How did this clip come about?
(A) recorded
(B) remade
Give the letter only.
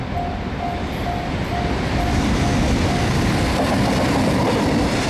A